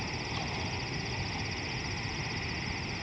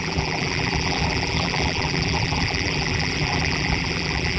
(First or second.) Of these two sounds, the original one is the first